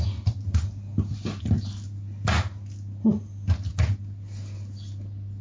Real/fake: real